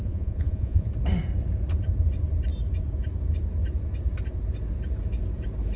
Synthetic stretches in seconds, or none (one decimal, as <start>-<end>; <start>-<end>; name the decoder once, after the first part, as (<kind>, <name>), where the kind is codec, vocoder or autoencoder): 0.0-0.9 (vocoder, Vocos)